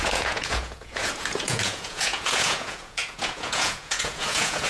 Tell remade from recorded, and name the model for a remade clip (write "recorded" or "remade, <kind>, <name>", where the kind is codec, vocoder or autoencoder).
remade, vocoder, Vocos